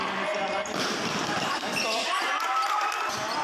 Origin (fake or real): real